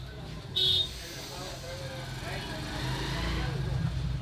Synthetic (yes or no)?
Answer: no